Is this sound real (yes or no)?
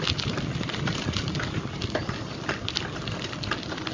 yes